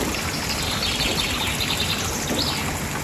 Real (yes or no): yes